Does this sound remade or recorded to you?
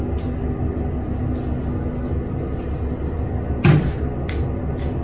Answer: recorded